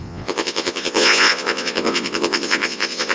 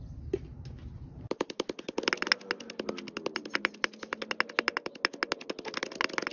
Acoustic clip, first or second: second